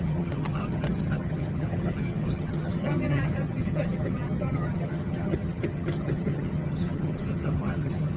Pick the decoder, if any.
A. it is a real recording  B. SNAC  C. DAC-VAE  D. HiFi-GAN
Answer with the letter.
D